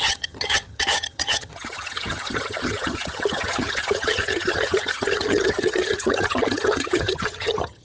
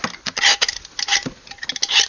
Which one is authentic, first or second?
second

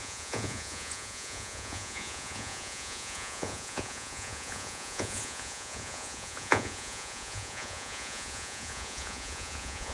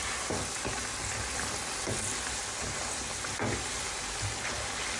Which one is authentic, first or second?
second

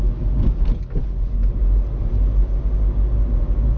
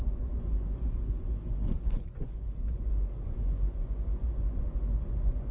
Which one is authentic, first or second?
first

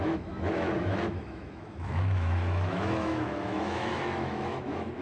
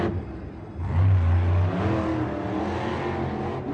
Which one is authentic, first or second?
second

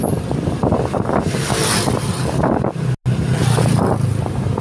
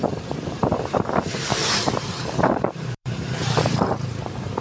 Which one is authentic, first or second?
first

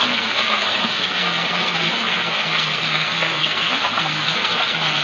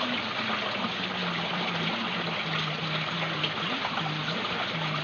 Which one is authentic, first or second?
second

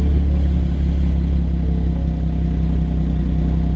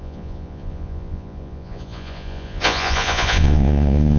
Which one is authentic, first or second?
first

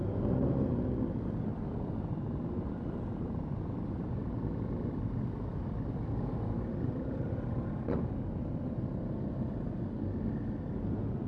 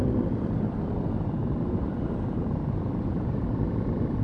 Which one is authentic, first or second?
first